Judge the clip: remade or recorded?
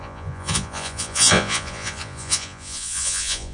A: remade